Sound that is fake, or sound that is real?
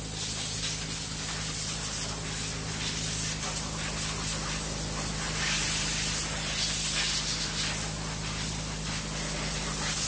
real